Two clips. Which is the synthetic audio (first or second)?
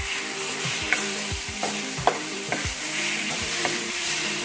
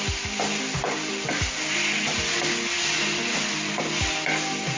first